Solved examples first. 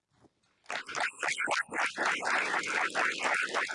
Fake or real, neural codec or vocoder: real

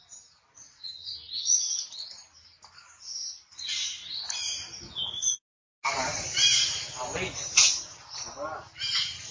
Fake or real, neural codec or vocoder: real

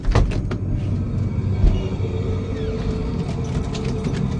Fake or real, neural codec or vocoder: real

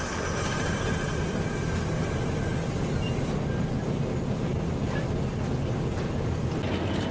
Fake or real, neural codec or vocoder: real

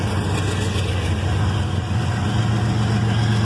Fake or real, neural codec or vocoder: real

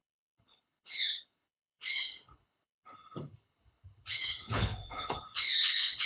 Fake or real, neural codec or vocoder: fake, codec, HILCodec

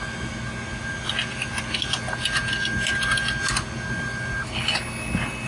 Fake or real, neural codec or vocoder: real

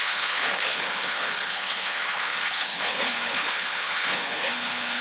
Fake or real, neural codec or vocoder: fake, codec, HILCodec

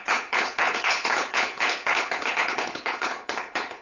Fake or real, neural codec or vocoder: fake, codec, HILCodec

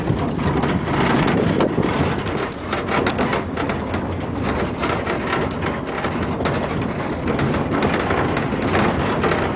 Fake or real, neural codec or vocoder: real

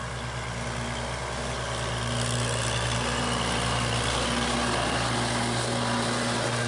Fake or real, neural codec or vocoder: real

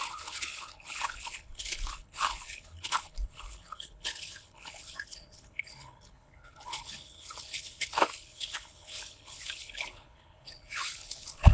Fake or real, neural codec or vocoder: fake, codec, HILCodec